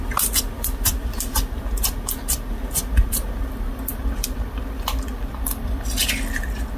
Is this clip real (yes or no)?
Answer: no